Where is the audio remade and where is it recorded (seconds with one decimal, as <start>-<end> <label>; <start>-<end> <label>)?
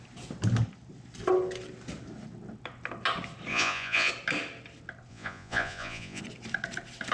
0.0-3.5 recorded; 3.5-4.1 remade; 4.1-5.1 recorded; 5.1-6.2 remade; 6.2-7.1 recorded